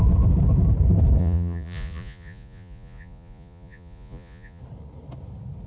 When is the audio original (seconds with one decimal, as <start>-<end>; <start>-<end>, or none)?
0.0-1.2; 4.6-5.7